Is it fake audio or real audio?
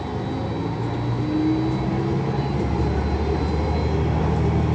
real